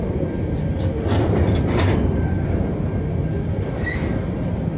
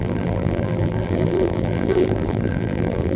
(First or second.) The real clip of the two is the first